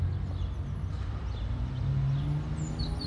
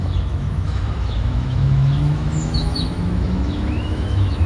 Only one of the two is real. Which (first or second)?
first